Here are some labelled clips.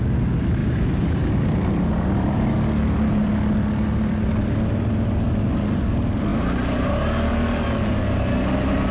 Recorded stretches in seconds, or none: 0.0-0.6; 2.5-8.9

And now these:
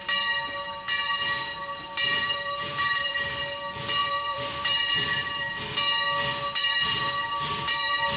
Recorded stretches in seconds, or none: 0.0-1.6; 3.4-4.0; 5.5-6.6